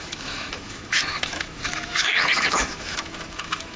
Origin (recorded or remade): remade